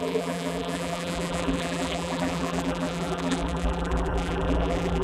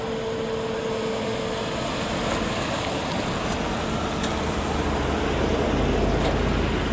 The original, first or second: second